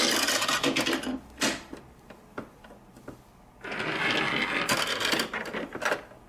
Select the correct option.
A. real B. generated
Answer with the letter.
A